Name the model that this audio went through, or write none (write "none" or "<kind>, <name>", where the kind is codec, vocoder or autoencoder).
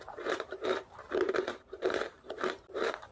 vocoder, BigVGAN v2